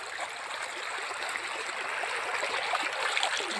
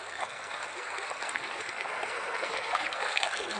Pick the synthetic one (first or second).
second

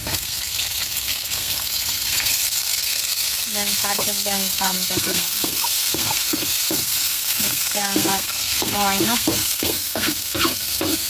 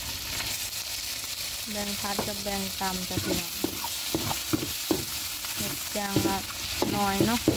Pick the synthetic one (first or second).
first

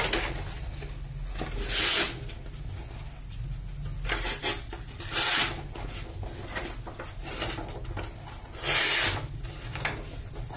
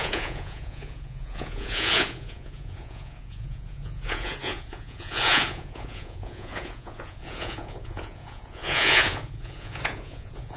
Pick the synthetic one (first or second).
second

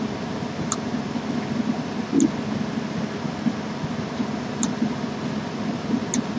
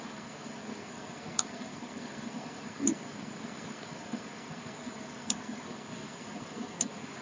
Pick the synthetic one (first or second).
second